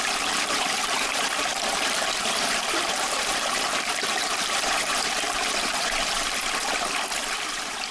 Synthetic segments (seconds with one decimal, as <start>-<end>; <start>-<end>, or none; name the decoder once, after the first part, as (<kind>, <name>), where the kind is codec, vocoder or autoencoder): 0.0-1.5 (vocoder, BigVGAN v2); 2.2-6.4; 7.3-7.9